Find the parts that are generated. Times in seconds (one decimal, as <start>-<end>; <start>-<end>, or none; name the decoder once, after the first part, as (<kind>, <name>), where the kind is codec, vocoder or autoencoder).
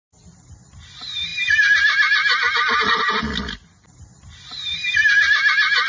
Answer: none